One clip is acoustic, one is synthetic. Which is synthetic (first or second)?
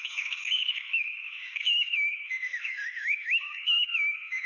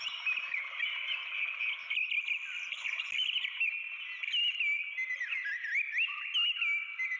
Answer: first